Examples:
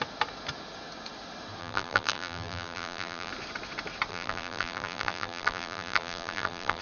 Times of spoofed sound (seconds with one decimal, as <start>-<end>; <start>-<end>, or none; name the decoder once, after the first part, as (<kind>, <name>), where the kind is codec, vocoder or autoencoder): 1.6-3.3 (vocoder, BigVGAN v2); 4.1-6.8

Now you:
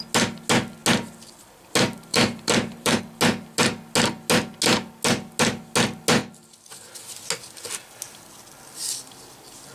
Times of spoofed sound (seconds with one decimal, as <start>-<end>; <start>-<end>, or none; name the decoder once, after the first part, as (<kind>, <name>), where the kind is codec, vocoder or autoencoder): 2.1-3.0 (vocoder, BigVGAN v2)

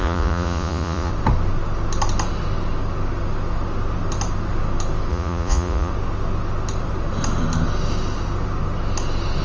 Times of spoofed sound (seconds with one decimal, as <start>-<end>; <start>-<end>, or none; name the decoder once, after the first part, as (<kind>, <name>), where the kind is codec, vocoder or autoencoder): 0.0-1.1 (vocoder, Vocos); 5.1-5.9

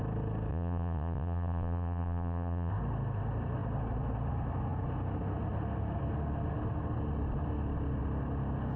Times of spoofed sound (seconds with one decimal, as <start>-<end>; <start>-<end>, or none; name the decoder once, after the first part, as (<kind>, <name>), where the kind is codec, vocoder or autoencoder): 0.5-2.7 (vocoder, Vocos)

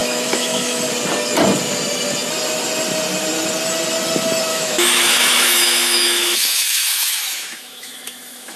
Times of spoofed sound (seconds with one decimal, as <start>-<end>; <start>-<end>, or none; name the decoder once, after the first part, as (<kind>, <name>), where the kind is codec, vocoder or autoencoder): 0.0-0.8 (autoencoder, DAC-VAE); 4.5-8.6

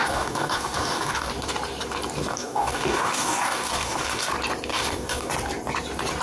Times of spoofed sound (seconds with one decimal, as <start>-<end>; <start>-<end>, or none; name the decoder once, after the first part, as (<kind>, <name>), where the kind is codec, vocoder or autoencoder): 0.0-1.3 (codec, DAC); 2.3-4.3; 4.7-5.3